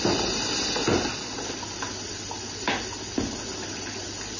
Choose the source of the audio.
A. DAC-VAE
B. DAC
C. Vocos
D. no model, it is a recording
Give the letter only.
D